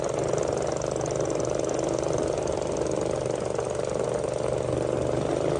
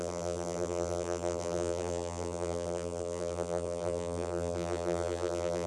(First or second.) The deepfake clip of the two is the second